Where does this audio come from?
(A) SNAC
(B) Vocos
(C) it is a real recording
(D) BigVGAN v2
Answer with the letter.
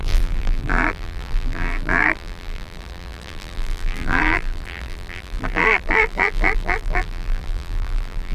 D